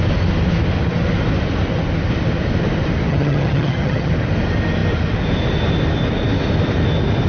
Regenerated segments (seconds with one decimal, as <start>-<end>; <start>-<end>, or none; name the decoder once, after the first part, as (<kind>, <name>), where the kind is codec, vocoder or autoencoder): 3.1-4.1 (vocoder, HiFi-GAN)